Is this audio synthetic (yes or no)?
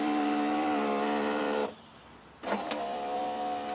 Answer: yes